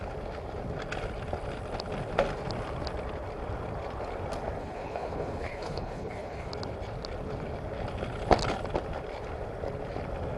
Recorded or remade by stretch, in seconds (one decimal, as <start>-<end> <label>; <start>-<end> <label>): 0.0-4.6 recorded; 4.6-6.5 remade; 6.5-10.4 recorded